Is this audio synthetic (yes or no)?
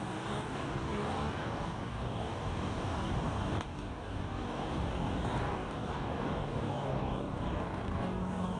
yes